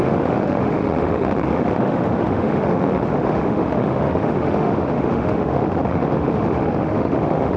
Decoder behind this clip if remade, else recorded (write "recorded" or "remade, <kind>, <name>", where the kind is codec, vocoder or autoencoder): remade, autoencoder, DAC-VAE